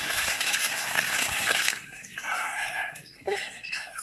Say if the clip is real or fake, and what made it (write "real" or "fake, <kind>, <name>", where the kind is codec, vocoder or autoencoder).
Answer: fake, codec, SNAC